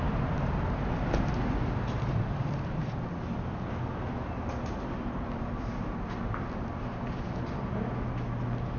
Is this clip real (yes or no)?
yes